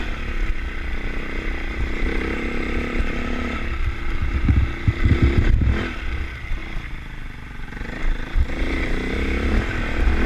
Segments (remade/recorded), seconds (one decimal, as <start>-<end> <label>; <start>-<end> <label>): 0.0-10.3 recorded

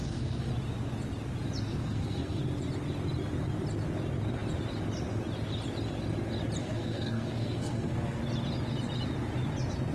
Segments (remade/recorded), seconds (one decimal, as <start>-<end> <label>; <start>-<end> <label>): 0.0-0.5 remade; 0.5-1.8 recorded; 1.8-2.4 remade; 2.4-6.6 recorded; 6.6-8.2 remade; 8.2-9.9 recorded

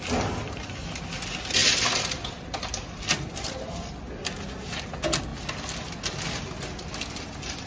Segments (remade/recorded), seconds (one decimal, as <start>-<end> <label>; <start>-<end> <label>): 0.0-7.7 recorded

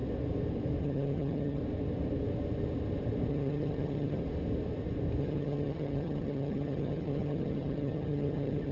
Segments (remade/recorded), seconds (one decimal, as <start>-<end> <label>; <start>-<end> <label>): 0.0-0.8 recorded; 0.8-1.6 remade; 1.6-3.3 recorded; 3.3-4.2 remade; 4.2-5.2 recorded; 5.2-8.7 remade

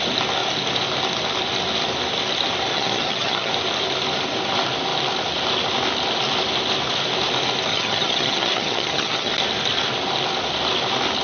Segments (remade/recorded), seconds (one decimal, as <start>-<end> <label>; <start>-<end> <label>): 0.0-2.7 recorded; 2.7-3.5 remade; 3.5-7.7 recorded; 7.7-9.3 remade; 9.3-11.2 recorded

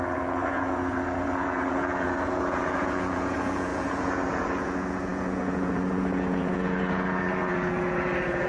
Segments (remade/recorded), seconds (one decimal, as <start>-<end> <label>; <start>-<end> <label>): 0.0-8.5 remade